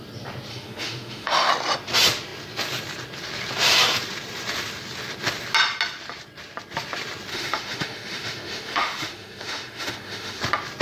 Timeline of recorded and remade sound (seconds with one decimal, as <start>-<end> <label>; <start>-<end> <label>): 0.0-0.5 recorded; 0.5-1.5 remade; 1.5-7.3 recorded; 7.3-10.4 remade; 10.4-10.8 recorded